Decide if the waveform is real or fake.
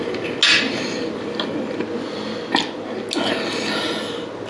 real